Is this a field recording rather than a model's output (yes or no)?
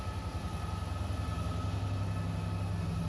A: yes